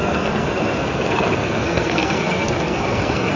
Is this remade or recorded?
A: remade